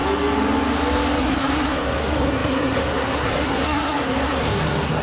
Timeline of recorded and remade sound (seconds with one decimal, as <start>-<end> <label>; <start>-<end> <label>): 0.0-1.2 recorded; 1.2-5.0 remade